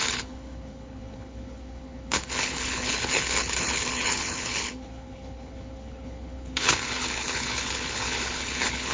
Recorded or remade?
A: remade